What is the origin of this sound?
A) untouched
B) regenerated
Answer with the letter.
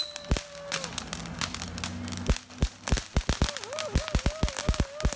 A